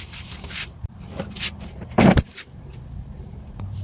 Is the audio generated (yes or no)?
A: yes